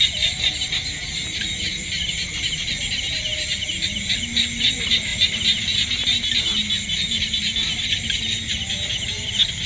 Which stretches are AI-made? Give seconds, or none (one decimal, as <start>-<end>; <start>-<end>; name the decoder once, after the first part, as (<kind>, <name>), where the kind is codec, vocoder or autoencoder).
none

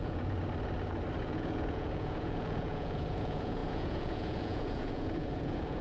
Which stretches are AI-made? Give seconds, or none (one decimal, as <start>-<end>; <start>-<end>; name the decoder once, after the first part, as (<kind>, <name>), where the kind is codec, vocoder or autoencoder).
0.0-0.4 (vocoder, Vocos); 1.2-5.8

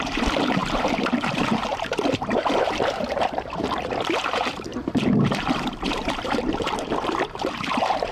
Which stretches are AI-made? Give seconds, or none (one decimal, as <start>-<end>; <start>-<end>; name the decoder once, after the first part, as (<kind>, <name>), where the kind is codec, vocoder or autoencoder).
0.0-8.1 (vocoder, BigVGAN v2)

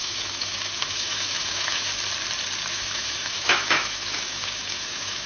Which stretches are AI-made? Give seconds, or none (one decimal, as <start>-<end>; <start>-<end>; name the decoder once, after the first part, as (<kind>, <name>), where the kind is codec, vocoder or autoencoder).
0.0-1.9 (autoencoder, DAC-VAE); 2.7-5.3

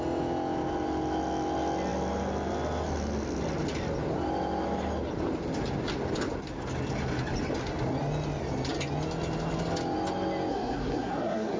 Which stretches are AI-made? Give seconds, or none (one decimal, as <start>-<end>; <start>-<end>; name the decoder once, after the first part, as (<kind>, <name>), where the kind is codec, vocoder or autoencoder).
10.5-11.6 (codec, SNAC)